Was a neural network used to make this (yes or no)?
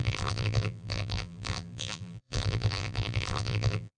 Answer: yes